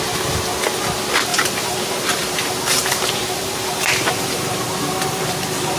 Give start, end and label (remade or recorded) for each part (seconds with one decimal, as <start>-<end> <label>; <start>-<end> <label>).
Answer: 0.0-1.3 recorded; 1.3-4.8 remade; 4.8-5.8 recorded